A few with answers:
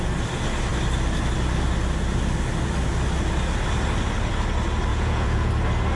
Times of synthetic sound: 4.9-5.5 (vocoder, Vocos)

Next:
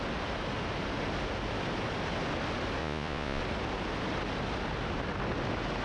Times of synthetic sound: 2.8-3.4 (vocoder, Vocos)